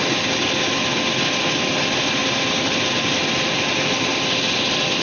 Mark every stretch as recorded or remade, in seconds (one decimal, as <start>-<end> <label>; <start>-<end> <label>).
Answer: 0.0-5.0 recorded